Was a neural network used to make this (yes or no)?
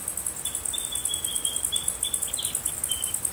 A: no